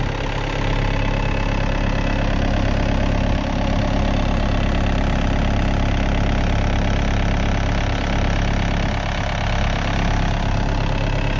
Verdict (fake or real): real